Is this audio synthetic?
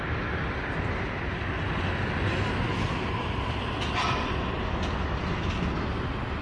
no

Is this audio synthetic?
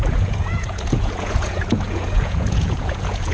yes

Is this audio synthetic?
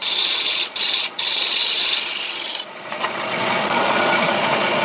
yes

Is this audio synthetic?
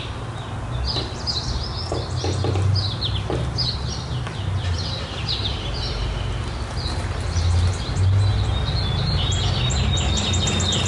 no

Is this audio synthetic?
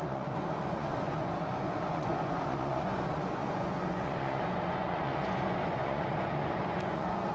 yes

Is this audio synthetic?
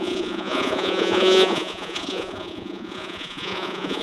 yes